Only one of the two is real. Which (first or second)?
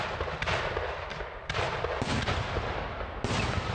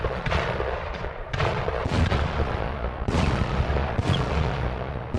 first